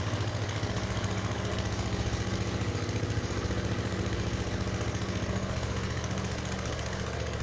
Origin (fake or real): fake